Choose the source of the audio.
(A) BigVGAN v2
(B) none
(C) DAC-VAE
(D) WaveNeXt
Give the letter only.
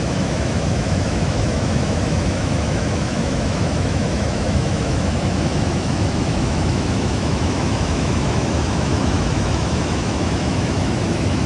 C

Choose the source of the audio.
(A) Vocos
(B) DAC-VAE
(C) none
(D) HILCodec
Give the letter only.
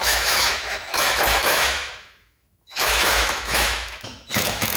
B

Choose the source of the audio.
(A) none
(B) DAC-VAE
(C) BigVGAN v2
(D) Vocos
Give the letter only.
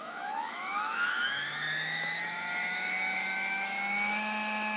B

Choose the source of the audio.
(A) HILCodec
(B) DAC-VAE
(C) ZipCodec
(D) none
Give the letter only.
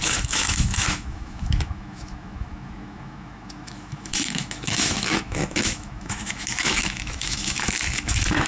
B